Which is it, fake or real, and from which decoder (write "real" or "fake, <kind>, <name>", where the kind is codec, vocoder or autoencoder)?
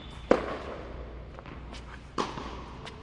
real